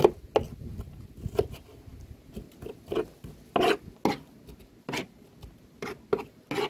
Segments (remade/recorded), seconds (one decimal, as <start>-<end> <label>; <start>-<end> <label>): 0.0-6.7 recorded